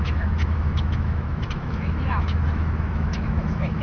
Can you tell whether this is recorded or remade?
remade